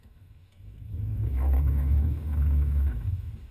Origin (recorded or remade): remade